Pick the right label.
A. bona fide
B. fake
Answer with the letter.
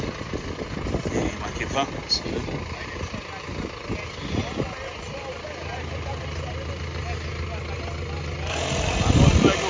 A